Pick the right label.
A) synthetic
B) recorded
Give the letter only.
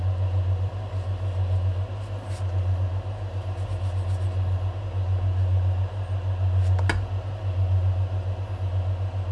B